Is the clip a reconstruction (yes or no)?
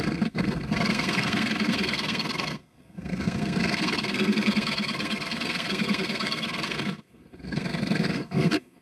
yes